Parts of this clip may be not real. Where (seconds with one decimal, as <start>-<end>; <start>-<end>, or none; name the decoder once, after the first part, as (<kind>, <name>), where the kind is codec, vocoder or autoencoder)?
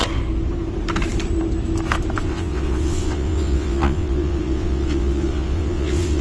2.2-6.2 (vocoder, WaveNeXt)